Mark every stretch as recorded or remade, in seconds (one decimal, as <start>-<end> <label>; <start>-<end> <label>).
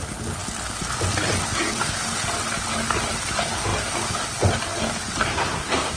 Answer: 0.0-5.3 recorded; 5.3-6.0 remade